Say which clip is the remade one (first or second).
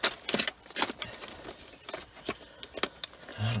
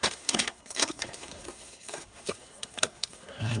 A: second